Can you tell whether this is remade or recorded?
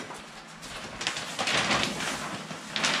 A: recorded